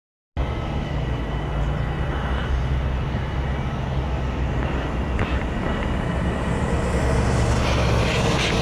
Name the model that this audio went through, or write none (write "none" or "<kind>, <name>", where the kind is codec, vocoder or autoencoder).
none